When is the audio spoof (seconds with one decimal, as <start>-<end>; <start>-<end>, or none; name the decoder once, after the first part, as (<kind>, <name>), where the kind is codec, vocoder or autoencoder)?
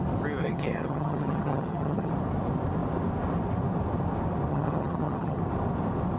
0.4-2.1 (vocoder, HiFi-GAN); 4.5-5.4